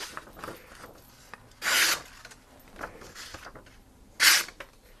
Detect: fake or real real